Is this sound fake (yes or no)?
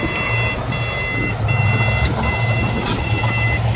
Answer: no